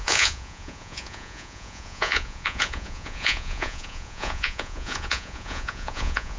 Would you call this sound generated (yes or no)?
yes